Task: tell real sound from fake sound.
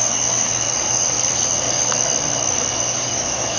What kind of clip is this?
fake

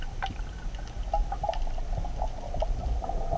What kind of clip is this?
real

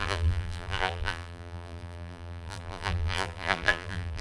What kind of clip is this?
fake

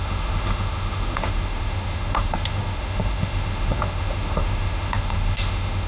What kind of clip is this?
fake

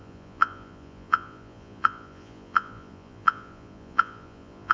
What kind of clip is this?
fake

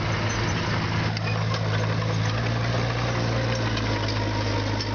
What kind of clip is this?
real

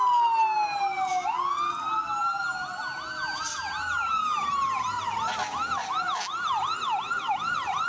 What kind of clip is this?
real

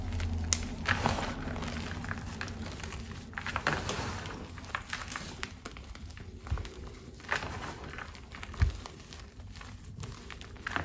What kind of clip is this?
real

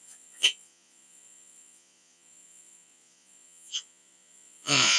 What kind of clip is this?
fake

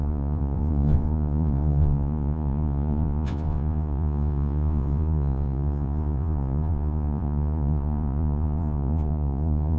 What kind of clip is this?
fake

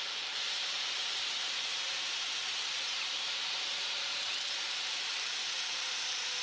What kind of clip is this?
fake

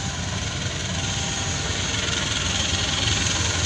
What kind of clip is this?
real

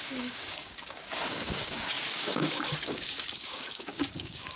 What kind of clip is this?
fake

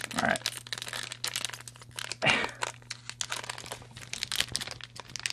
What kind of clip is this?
real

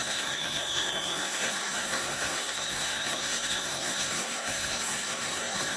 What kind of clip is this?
fake